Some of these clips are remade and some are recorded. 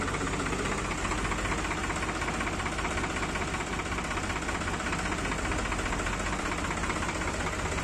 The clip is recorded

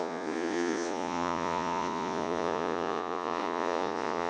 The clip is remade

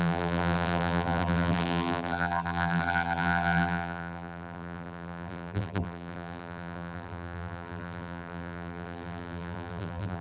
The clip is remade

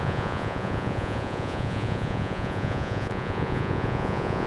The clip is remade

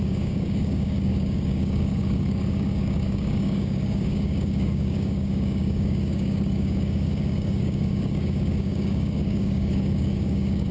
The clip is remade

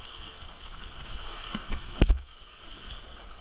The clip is remade